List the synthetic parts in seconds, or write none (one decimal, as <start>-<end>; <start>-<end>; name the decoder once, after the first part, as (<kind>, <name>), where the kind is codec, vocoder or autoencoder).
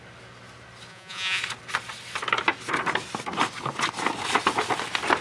0.9-1.4 (vocoder, Vocos)